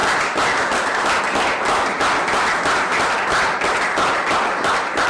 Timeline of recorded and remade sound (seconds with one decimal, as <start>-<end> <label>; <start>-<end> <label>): 0.0-5.1 recorded